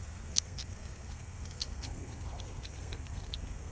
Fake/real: fake